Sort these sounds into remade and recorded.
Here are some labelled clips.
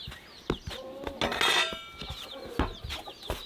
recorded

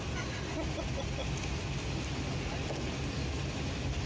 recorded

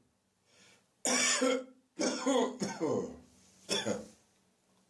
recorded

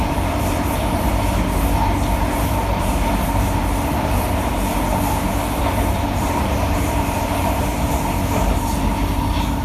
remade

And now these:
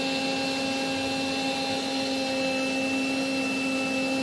recorded